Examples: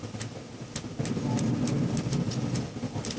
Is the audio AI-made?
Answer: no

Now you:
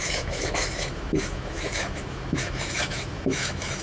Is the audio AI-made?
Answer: yes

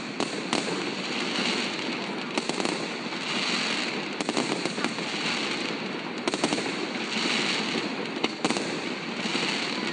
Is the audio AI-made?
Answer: no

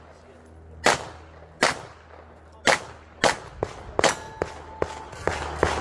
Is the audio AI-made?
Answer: no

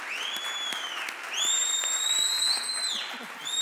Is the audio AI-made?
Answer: no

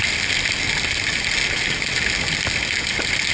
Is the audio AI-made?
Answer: no